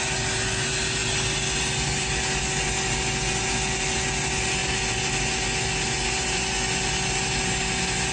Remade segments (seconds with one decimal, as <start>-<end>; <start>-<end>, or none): none